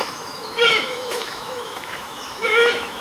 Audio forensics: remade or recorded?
remade